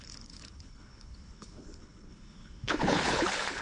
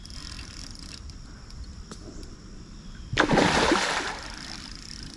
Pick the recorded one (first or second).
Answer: second